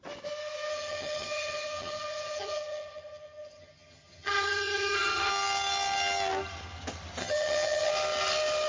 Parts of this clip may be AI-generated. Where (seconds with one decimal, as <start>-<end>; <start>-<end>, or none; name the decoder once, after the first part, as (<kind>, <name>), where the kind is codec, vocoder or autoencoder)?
0.7-5.3 (vocoder, HiFi-GAN); 7.2-7.9